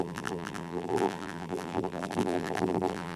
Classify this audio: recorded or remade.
remade